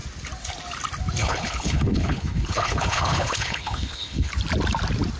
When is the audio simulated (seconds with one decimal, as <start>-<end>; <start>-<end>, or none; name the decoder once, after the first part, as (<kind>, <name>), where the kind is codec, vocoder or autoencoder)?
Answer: 1.2-4.3 (codec, HILCodec)